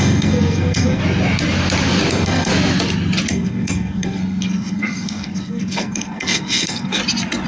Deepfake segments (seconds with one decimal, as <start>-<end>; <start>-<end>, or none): 0.0-1.0; 2.1-2.5; 3.3-7.0